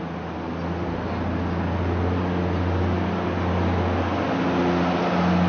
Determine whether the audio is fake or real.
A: real